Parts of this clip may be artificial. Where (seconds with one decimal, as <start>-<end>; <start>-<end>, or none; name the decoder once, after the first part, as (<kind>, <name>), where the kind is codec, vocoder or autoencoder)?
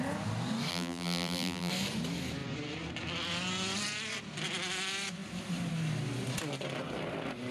0.7-1.7 (vocoder, BigVGAN v2)